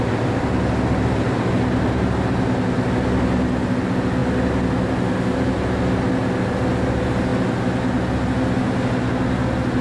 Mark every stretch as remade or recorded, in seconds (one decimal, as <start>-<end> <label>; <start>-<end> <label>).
0.0-9.8 recorded